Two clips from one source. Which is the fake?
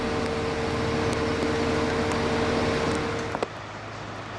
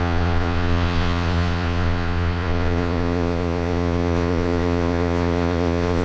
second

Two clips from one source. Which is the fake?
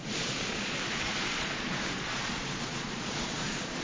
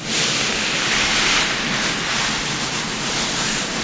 first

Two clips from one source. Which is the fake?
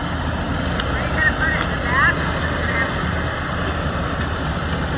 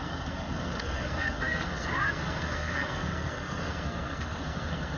second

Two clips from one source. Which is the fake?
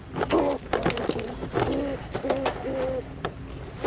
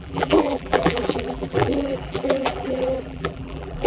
second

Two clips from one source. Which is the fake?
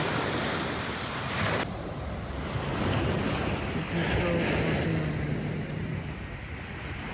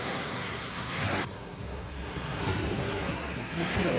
second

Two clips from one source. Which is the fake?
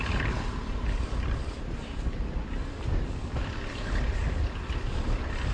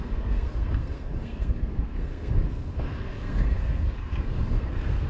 second